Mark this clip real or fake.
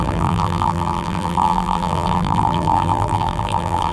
fake